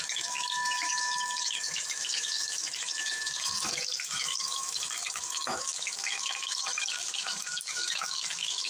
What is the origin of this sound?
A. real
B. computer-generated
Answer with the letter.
B